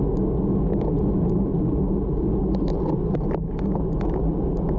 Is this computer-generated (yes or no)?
no